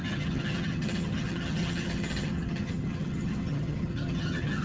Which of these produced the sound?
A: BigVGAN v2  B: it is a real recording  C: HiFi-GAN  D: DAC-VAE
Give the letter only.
C